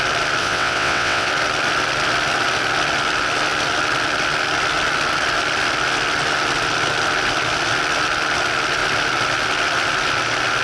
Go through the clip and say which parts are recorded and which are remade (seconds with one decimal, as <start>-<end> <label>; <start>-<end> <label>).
0.0-0.4 recorded; 0.4-1.3 remade; 1.3-10.6 recorded